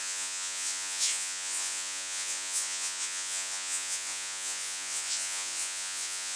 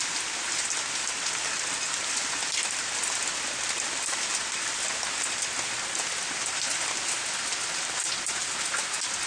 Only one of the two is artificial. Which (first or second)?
first